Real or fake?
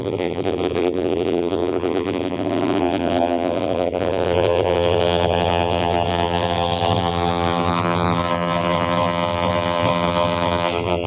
fake